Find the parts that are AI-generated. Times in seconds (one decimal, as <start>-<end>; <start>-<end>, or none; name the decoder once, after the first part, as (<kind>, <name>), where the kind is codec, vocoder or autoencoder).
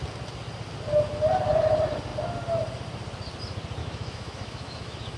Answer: 3.8-5.2 (autoencoder, DAC-VAE)